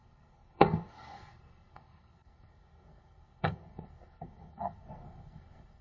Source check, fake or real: fake